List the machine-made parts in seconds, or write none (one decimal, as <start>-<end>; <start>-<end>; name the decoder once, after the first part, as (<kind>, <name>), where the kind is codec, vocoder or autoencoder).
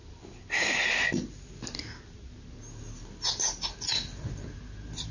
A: none